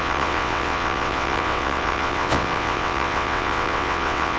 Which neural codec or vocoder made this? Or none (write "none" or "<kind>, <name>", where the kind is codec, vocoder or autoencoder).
vocoder, WaveNeXt